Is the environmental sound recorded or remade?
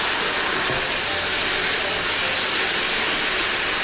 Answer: recorded